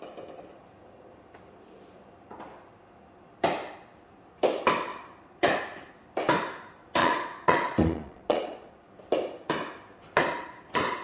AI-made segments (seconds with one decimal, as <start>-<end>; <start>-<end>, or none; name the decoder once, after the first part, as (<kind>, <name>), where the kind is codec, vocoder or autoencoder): 7.0-8.7 (vocoder, Vocos)